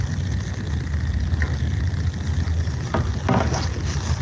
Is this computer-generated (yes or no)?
no